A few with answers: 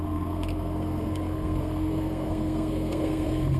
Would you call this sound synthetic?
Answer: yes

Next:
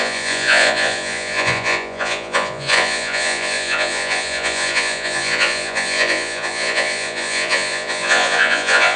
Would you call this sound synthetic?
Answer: yes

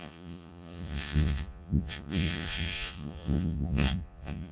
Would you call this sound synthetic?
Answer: yes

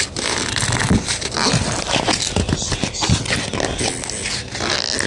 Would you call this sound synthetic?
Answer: no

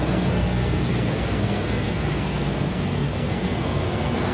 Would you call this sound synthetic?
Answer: yes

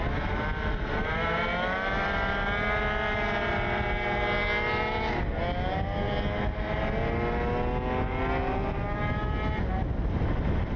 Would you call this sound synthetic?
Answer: no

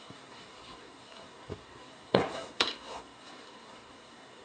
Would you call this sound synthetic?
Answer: yes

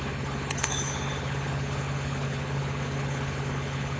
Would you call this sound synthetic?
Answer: yes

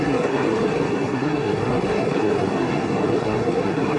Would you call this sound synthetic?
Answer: yes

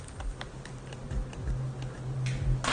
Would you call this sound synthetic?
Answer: no